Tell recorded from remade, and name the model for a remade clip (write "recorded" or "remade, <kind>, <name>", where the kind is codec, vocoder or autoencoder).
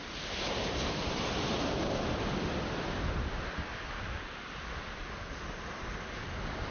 recorded